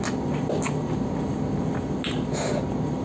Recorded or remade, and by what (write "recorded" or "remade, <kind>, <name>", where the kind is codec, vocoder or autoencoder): recorded